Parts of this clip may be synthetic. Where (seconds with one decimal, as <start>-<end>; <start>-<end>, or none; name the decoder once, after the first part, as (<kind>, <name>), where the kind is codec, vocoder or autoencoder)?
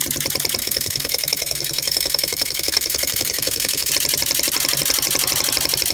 0.6-3.9 (codec, SNAC)